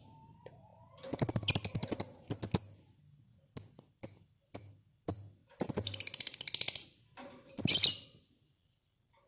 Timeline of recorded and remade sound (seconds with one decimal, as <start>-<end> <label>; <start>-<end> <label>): 0.0-9.3 recorded